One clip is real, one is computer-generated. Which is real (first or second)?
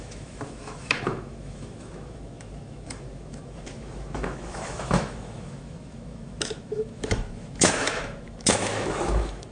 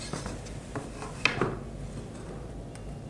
second